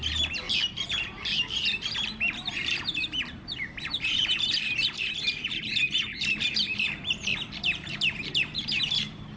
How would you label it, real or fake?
fake